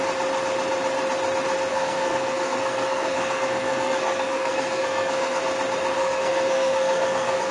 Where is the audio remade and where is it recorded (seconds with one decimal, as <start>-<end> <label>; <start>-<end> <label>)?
0.0-1.7 recorded; 1.7-5.4 remade; 5.4-6.0 recorded; 6.0-7.5 remade